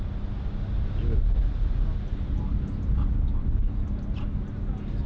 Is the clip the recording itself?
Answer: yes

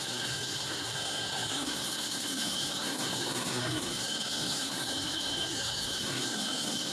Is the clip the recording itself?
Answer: no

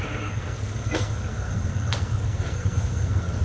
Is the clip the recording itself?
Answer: no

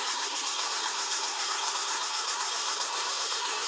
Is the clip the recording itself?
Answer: no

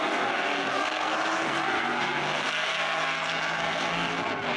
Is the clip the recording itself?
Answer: no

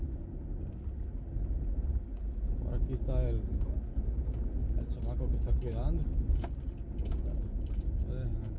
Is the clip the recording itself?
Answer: yes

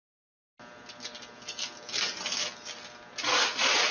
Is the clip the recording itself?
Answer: yes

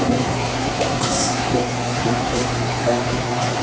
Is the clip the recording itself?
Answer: no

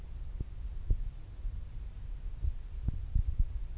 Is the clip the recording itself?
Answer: yes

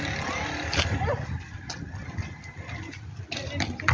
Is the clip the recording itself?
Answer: yes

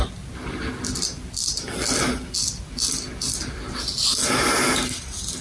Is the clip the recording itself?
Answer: yes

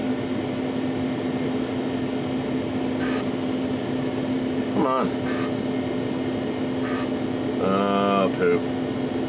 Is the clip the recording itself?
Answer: yes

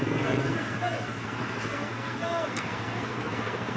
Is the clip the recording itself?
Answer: no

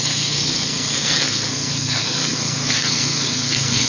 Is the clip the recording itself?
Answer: no